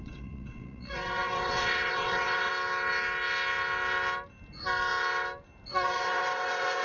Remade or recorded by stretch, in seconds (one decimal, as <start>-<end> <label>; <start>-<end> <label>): 0.0-2.5 remade; 2.5-5.7 recorded; 5.7-6.8 remade